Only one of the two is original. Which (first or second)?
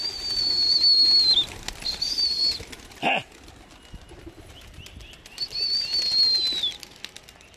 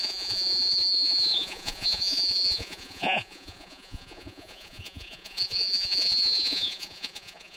first